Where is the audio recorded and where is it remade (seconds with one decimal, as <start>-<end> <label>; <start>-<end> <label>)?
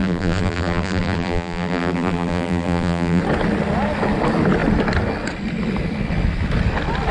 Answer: 0.0-3.2 remade; 3.2-7.1 recorded